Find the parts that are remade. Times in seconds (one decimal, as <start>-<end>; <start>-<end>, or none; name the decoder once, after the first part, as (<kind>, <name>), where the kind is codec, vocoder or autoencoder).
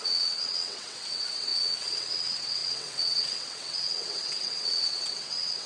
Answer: 0.0-5.7 (vocoder, WaveNeXt)